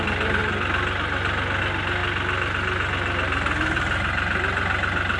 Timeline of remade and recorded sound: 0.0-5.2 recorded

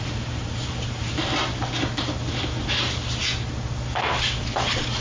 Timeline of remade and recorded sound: 0.0-1.4 remade; 1.4-4.4 recorded; 4.4-5.0 remade

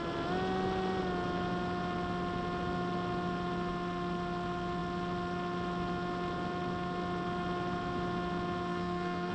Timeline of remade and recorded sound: 0.0-8.7 recorded; 8.7-9.3 remade

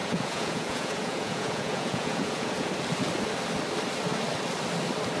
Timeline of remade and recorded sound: 0.0-2.7 remade; 2.7-5.2 recorded

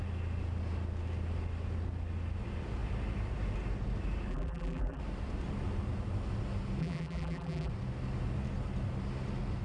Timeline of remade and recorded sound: 0.0-4.3 recorded; 4.3-5.0 remade; 5.0-6.8 recorded; 6.8-7.7 remade; 7.7-9.6 recorded

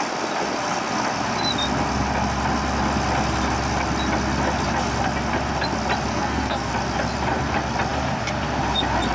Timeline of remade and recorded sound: 0.0-6.1 recorded; 6.1-6.7 remade; 6.7-9.1 recorded

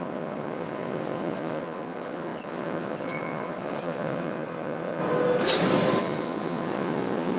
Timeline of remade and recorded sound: 0.0-5.0 remade; 5.0-6.0 recorded; 6.0-7.4 remade

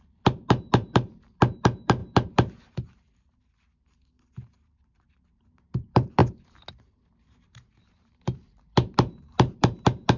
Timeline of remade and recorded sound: 0.0-6.2 remade; 6.2-6.7 recorded; 6.7-10.2 remade